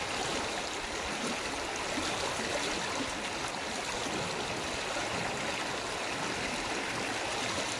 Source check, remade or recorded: recorded